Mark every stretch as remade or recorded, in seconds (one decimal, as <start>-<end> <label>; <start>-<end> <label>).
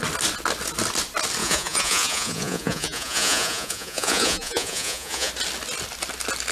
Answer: 0.0-1.4 recorded; 1.4-5.3 remade; 5.3-6.5 recorded